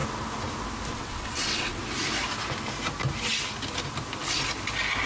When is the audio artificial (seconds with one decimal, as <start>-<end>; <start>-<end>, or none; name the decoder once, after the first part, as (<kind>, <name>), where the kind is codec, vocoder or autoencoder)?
0.9-1.8 (vocoder, WaveNeXt)